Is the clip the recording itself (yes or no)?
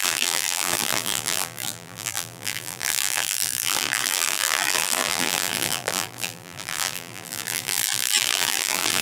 no